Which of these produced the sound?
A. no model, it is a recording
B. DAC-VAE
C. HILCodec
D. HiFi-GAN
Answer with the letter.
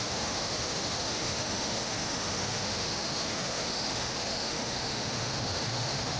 B